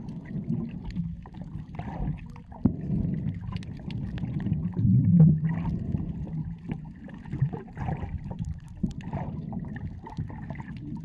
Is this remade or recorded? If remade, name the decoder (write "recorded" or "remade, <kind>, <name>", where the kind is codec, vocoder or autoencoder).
recorded